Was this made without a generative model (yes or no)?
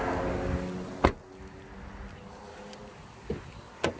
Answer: yes